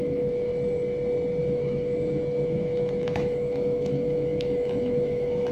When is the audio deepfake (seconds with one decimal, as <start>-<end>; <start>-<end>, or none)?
0.0-0.5; 1.4-5.5